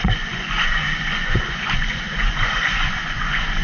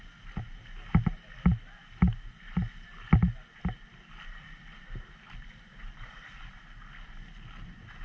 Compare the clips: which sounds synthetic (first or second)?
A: first